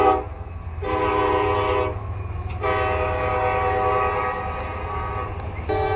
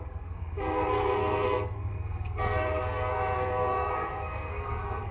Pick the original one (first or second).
first